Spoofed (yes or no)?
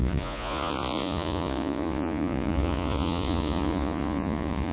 yes